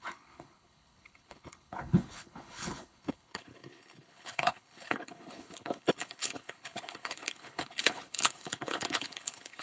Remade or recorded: remade